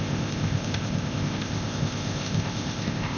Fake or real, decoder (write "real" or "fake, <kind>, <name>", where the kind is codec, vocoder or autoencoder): fake, codec, ZipCodec